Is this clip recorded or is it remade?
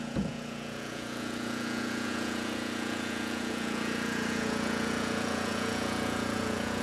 remade